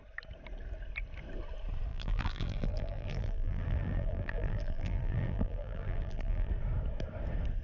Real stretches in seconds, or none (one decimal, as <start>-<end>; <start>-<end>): 0.0-1.9; 6.5-7.6